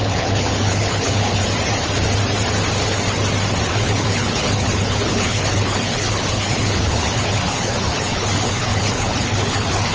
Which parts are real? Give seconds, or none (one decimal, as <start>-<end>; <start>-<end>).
1.4-3.7